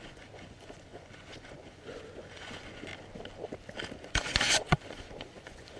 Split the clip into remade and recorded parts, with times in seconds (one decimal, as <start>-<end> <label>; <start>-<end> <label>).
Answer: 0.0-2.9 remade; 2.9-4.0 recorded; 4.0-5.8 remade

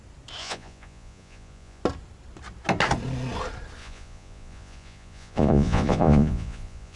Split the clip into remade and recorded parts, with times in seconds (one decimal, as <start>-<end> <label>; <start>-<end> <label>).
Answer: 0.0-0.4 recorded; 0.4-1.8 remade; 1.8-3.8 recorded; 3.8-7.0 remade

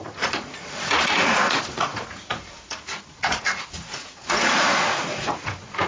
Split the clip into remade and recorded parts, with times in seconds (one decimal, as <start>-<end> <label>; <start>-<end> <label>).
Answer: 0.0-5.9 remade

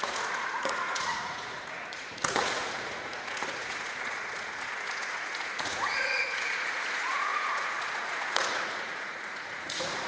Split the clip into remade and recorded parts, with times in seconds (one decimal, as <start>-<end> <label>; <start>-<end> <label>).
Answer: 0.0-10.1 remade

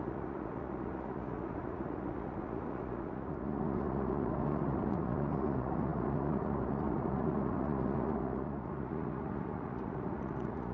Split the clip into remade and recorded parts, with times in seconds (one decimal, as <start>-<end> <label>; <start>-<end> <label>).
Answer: 0.0-10.7 remade